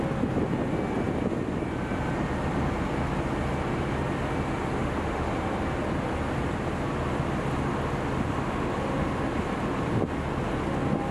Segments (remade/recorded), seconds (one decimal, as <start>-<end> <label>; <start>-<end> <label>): 0.0-4.8 recorded; 4.8-5.3 remade; 5.3-11.1 recorded